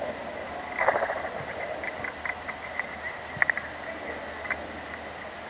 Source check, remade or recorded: recorded